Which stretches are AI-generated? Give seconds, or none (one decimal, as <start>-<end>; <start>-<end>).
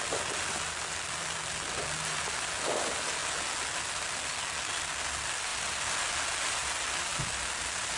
none